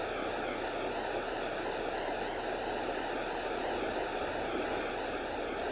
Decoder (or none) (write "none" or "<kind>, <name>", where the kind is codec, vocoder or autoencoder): none